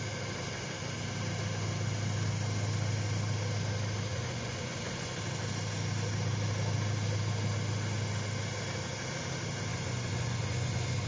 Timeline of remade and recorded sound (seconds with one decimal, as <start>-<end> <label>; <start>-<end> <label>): 0.0-4.1 recorded; 4.1-5.2 remade; 5.2-9.7 recorded; 9.7-11.1 remade